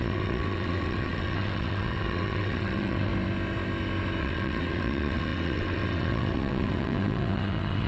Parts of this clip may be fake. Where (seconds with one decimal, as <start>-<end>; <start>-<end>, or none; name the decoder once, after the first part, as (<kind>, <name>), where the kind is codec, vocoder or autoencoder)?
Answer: 0.0-3.1 (vocoder, WaveNeXt); 4.2-7.9